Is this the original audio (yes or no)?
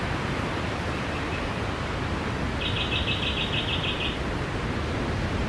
yes